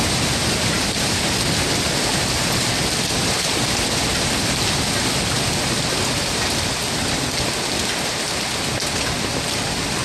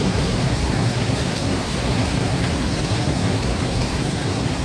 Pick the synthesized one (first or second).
second